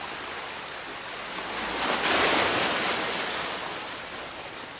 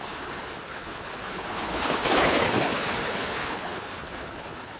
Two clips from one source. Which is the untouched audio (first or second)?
first